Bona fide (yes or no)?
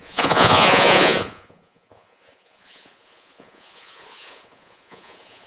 no